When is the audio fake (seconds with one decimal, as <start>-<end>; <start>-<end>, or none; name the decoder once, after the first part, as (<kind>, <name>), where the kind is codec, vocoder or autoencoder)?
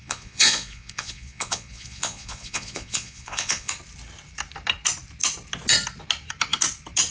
0.0-3.7 (vocoder, Vocos)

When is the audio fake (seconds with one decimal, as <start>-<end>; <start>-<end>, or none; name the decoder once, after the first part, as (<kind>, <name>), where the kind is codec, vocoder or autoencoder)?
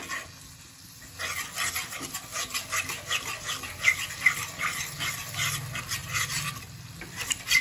none